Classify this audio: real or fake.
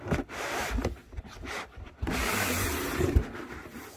fake